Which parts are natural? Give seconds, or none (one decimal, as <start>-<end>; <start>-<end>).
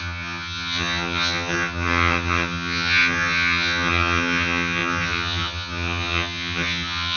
none